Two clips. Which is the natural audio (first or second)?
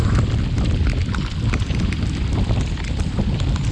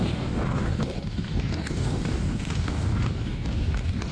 first